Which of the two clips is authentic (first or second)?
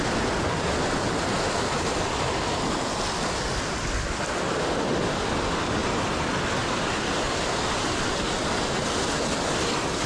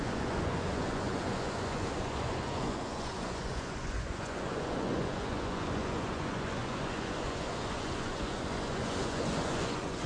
first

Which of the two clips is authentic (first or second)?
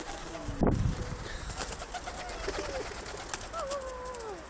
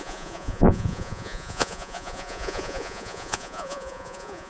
first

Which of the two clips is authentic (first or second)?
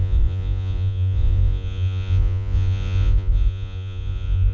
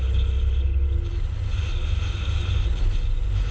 second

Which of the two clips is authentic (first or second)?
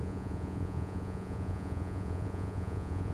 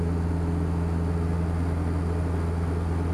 second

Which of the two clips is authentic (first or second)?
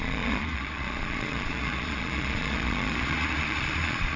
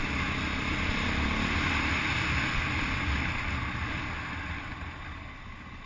second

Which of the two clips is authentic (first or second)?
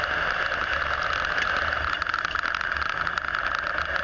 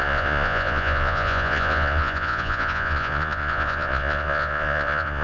first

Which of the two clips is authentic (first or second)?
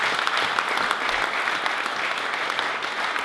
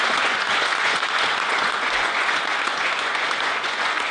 first